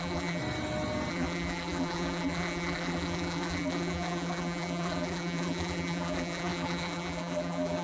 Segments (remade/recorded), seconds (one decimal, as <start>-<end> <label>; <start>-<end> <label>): 0.0-0.4 remade; 0.4-1.1 recorded; 1.1-7.8 remade